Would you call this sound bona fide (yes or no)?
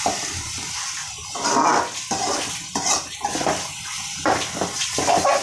yes